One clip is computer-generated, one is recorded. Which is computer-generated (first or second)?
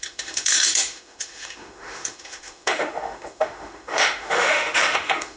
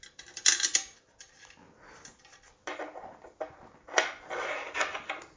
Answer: first